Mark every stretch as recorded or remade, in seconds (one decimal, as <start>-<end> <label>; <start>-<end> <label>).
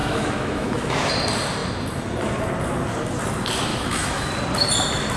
0.0-1.1 remade; 1.1-3.7 recorded; 3.7-4.3 remade; 4.3-5.2 recorded